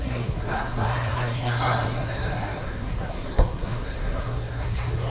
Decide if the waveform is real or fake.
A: fake